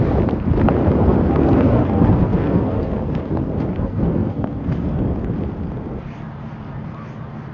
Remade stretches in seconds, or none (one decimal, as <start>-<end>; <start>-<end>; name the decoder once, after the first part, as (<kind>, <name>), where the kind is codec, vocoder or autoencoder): 0.8-5.0 (codec, SNAC)